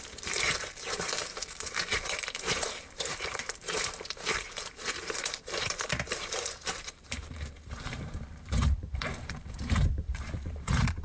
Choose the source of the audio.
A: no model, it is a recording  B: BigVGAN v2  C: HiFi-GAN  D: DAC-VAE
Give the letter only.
B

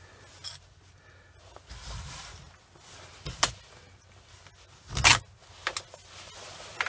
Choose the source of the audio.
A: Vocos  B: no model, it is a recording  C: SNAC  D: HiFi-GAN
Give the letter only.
B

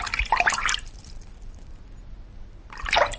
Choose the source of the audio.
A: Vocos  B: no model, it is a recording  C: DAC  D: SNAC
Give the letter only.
B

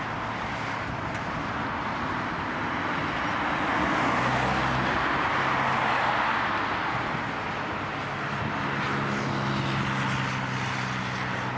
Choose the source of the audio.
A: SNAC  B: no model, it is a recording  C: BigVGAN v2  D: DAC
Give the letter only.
B